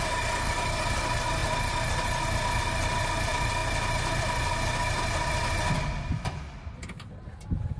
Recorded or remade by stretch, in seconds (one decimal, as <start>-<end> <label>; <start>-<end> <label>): 0.0-7.8 recorded